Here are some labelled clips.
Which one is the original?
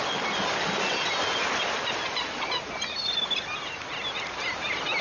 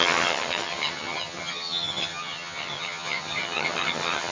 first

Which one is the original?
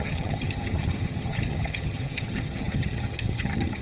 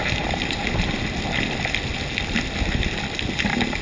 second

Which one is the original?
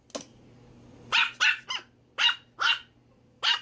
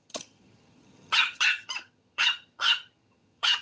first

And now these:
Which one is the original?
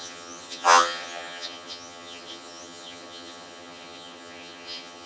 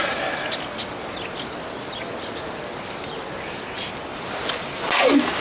second